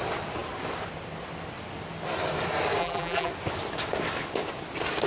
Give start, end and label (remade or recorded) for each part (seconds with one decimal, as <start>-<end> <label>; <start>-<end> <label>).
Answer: 0.0-2.8 recorded; 2.8-3.3 remade; 3.3-5.1 recorded